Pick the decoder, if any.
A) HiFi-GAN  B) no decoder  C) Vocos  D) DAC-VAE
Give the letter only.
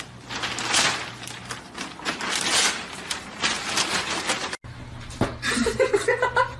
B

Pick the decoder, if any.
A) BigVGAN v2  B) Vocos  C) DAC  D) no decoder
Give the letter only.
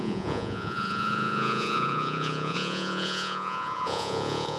B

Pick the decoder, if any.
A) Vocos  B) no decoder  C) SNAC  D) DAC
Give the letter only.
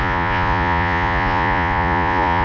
A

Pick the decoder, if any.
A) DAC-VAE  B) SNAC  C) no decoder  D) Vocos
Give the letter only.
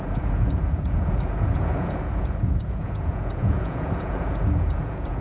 D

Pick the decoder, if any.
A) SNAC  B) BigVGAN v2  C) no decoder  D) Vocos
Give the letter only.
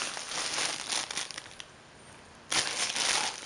C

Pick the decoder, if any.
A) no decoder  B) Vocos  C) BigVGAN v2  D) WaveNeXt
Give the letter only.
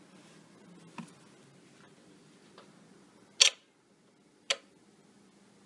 A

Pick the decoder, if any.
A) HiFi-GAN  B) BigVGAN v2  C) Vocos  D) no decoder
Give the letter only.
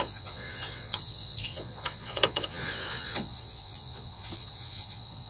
C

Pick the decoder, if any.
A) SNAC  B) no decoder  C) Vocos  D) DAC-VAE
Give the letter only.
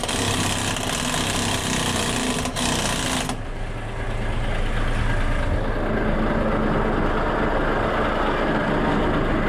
B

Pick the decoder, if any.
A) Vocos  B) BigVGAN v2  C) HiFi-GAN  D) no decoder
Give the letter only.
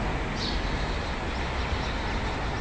D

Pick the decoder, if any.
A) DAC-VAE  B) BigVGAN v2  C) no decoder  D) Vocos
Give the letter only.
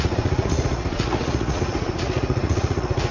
D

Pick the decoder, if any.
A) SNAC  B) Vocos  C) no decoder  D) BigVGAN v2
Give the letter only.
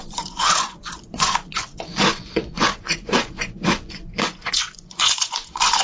B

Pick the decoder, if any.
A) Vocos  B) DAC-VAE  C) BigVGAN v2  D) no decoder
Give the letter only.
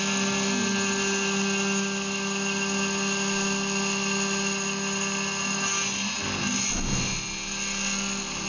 D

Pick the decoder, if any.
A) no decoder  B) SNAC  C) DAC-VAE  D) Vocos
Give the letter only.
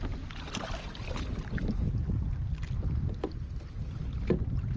A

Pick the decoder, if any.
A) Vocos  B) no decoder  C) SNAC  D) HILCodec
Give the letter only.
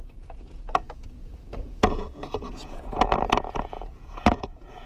A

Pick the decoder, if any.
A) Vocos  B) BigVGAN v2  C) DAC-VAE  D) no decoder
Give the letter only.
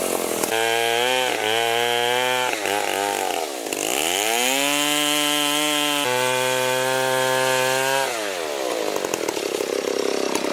D